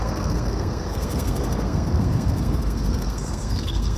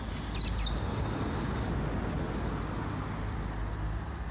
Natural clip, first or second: second